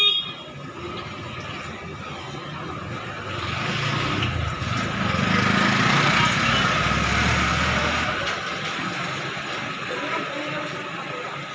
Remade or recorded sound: recorded